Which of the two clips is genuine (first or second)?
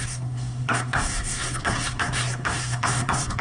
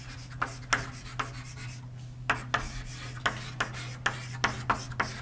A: second